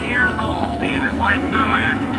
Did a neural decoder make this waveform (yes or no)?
yes